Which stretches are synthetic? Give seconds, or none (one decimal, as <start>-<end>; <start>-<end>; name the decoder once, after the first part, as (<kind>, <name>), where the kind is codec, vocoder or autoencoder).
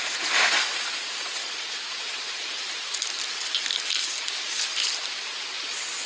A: none